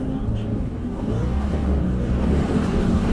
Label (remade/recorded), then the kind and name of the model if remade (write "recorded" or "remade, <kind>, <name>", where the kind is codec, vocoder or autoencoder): remade, codec, DAC